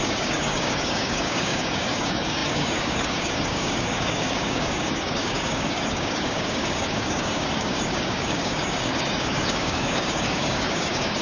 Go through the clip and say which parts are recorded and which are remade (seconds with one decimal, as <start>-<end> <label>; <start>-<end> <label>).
0.0-11.2 remade